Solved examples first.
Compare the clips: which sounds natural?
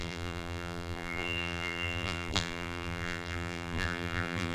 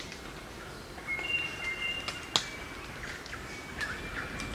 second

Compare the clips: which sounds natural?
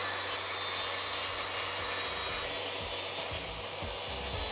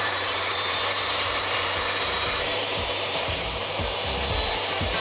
first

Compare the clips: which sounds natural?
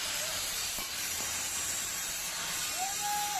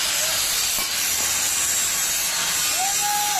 second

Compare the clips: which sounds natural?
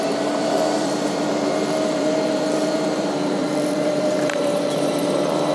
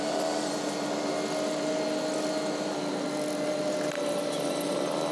second